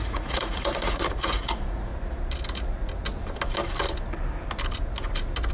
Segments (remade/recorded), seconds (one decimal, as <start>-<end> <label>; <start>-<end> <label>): 0.0-1.9 remade; 1.9-5.5 recorded